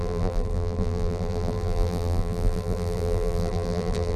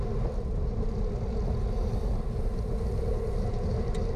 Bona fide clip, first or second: second